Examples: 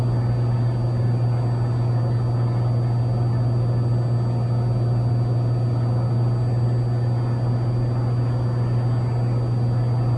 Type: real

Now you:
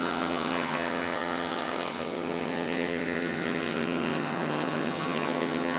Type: fake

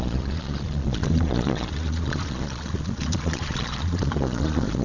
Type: fake